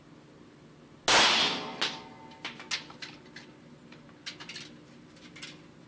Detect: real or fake real